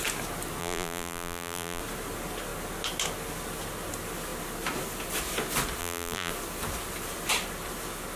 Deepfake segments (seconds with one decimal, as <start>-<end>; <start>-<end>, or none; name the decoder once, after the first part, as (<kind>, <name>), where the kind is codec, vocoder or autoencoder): 0.6-1.8 (vocoder, BigVGAN v2); 5.8-6.3